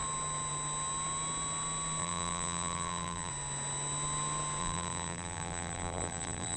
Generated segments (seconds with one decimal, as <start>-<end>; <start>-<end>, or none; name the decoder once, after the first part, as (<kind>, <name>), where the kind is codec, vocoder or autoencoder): 2.0-3.3 (vocoder, BigVGAN v2); 4.6-6.6